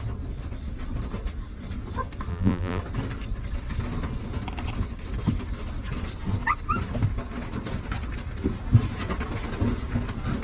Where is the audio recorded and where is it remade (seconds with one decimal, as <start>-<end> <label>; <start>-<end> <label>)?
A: 0.0-2.3 recorded; 2.3-2.8 remade; 2.8-10.4 recorded